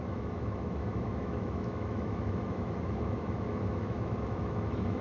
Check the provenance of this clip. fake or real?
fake